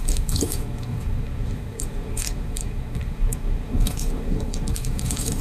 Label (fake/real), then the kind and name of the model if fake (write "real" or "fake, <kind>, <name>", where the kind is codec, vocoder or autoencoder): fake, codec, SNAC